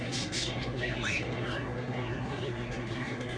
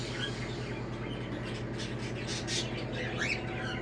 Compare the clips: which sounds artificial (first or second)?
first